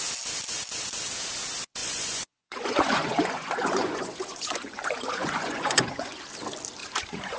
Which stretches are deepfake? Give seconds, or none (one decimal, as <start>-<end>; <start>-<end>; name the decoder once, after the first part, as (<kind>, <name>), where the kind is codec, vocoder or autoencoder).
1.8-6.2 (vocoder, Vocos); 6.8-7.4